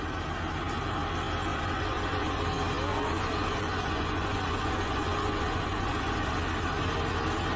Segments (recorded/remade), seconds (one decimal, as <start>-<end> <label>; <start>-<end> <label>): 0.0-1.5 recorded; 1.5-2.4 remade; 2.4-2.9 recorded; 2.9-6.3 remade; 6.3-7.6 recorded